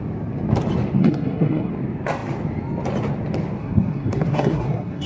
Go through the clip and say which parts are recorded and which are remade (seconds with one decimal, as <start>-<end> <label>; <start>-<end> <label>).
0.0-1.0 recorded; 1.0-1.7 remade; 1.7-3.6 recorded; 3.6-5.1 remade